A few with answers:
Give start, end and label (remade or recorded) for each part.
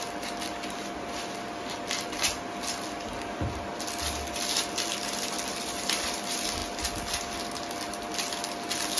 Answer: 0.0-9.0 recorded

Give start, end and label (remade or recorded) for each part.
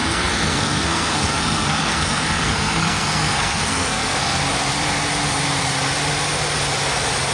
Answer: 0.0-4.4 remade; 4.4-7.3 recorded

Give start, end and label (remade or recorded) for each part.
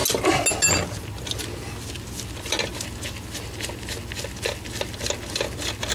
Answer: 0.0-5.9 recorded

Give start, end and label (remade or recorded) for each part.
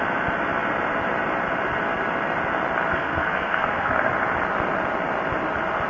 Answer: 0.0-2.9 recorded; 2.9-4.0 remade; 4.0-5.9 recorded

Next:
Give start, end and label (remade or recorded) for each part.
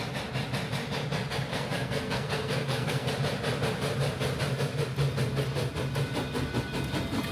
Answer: 0.0-1.5 recorded; 1.5-3.1 remade; 3.1-7.3 recorded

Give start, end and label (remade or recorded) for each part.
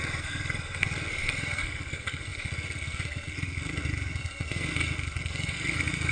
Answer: 0.0-6.1 remade